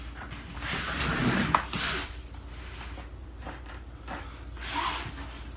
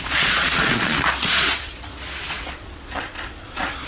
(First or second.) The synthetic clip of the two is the second